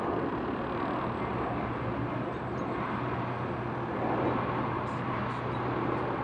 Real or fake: real